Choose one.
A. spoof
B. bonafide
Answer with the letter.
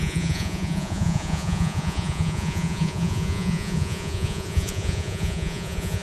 A